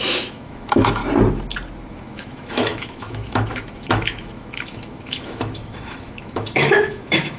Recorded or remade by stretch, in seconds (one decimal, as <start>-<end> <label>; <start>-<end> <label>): 0.0-1.0 remade; 1.0-1.9 recorded; 1.9-7.4 remade